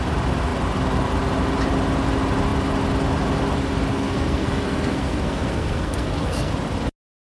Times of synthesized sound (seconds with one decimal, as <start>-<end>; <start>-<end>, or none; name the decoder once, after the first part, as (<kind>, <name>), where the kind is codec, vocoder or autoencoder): 3.9-6.5 (codec, SNAC)